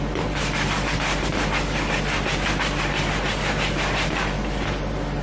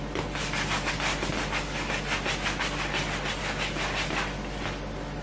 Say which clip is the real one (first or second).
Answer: second